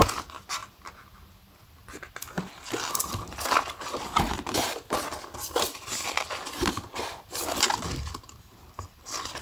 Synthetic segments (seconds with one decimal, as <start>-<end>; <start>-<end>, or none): none